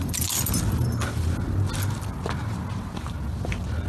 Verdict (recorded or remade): recorded